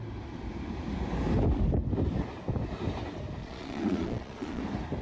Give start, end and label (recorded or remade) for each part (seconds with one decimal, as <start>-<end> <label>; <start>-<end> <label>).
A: 0.0-3.4 recorded; 3.4-4.6 remade; 4.6-5.0 recorded